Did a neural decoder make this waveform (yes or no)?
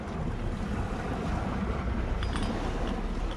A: no